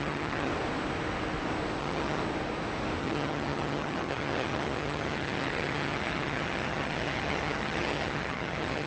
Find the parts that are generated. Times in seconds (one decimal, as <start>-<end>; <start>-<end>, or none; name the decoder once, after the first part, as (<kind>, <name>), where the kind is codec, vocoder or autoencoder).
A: 0.0-0.5 (vocoder, HiFi-GAN); 1.8-2.2; 3.0-8.9